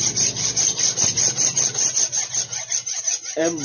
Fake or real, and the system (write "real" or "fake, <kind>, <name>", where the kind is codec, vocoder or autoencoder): real